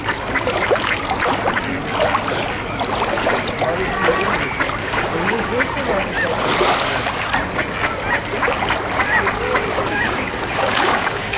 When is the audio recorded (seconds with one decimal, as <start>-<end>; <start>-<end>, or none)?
0.0-4.8; 5.5-9.7